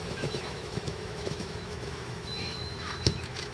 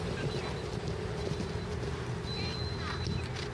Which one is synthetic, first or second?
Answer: first